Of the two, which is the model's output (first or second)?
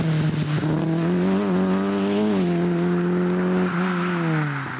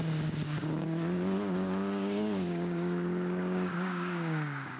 second